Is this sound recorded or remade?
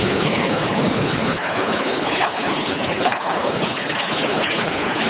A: remade